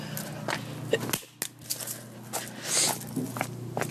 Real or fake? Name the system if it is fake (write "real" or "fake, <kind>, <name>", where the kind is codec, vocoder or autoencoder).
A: real